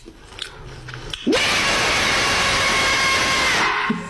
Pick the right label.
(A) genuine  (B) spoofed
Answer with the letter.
A